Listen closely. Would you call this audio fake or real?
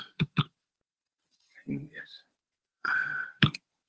fake